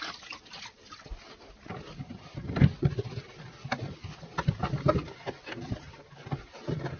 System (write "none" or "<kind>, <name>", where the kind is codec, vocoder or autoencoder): none